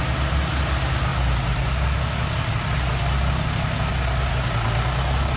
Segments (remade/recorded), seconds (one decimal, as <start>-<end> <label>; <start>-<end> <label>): 0.0-5.4 recorded